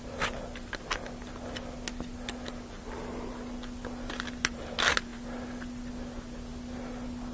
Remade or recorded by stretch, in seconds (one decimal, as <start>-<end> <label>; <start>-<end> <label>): 0.0-7.3 recorded